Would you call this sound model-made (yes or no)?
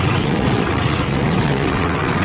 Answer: yes